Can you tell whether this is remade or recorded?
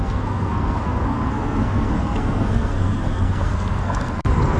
remade